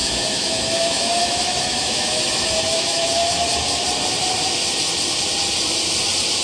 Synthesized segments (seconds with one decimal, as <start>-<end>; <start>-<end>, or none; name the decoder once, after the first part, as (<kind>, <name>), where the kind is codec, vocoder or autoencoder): 0.0-3.8 (autoencoder, DAC-VAE)